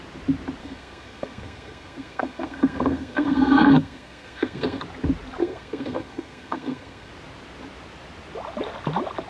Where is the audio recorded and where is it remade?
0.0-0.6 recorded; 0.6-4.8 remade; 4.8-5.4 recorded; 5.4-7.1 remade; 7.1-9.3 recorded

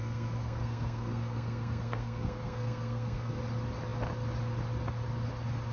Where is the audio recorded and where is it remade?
0.0-3.4 remade; 3.4-5.7 recorded

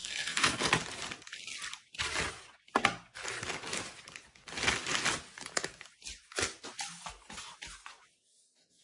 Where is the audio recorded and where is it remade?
0.0-0.7 remade; 0.7-8.8 recorded